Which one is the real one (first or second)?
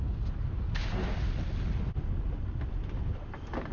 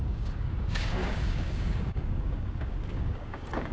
first